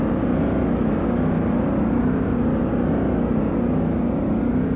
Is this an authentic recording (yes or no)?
yes